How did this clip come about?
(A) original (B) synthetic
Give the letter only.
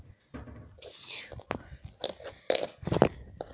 A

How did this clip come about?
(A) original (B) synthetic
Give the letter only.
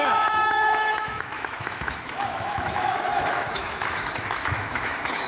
B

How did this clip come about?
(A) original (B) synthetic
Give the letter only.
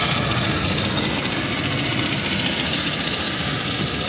A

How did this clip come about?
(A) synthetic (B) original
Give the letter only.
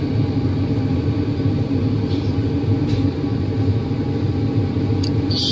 B